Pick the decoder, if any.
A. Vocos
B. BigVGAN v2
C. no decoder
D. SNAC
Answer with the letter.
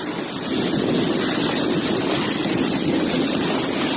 C